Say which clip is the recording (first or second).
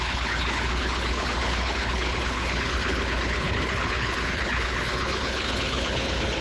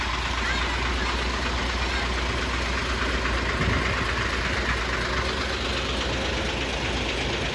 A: second